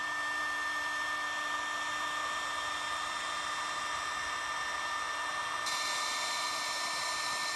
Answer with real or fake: real